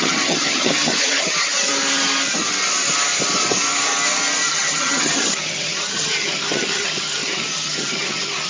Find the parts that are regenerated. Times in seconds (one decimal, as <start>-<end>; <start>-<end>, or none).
0.0-1.7; 4.5-8.5